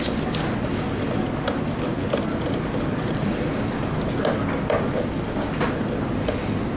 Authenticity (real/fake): real